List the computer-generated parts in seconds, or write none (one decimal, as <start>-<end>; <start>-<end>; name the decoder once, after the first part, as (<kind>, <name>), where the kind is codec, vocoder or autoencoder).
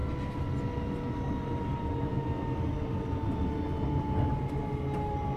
none